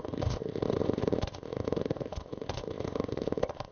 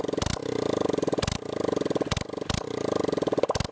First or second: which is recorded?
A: second